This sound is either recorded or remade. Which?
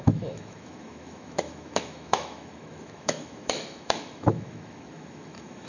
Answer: remade